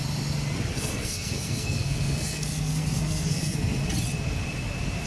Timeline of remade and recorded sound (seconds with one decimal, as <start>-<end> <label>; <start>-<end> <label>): 0.0-0.7 recorded; 0.7-3.8 remade; 3.8-5.1 recorded